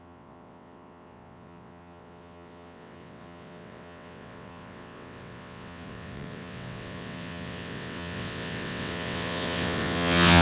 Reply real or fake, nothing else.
fake